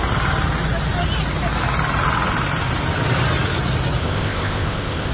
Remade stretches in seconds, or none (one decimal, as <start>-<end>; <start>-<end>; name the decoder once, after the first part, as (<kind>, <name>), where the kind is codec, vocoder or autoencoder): 4.0-5.1 (codec, ZipCodec)